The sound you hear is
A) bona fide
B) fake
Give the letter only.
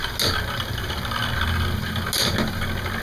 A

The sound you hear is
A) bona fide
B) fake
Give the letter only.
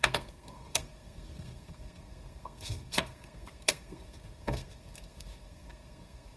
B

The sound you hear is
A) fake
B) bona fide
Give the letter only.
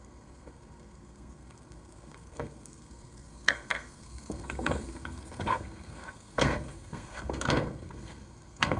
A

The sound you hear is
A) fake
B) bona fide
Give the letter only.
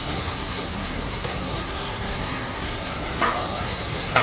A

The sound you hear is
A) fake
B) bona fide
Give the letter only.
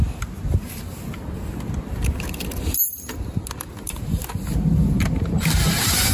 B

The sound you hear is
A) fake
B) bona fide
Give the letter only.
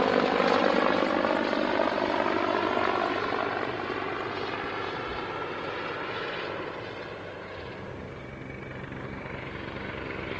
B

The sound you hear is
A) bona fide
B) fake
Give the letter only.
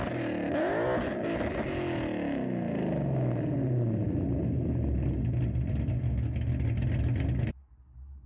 A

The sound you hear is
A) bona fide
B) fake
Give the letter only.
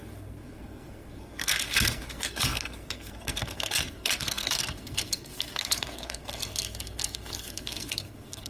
B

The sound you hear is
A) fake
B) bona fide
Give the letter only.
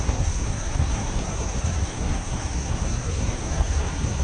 A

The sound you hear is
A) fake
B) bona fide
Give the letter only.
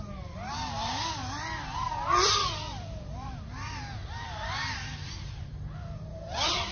B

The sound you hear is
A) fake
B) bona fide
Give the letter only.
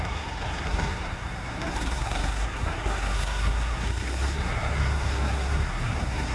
A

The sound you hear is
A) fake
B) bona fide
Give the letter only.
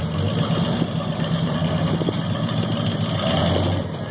B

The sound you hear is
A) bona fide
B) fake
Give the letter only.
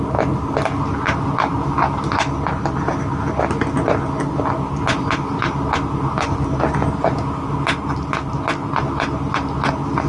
A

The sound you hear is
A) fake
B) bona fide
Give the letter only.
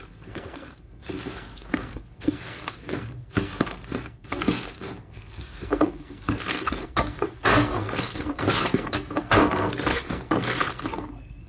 A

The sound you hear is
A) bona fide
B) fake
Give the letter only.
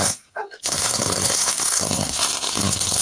B